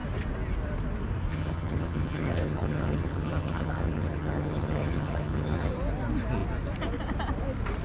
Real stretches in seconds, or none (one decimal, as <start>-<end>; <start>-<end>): 0.0-1.3; 5.7-7.8